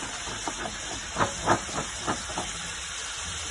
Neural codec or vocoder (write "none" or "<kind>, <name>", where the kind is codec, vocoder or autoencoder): none